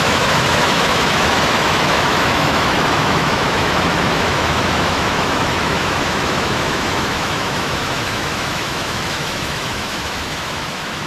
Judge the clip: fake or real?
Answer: fake